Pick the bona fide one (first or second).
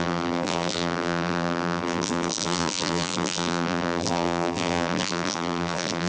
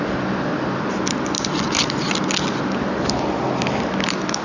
second